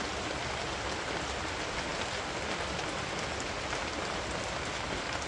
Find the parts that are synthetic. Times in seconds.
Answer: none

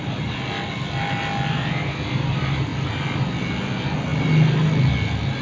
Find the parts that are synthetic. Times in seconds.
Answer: none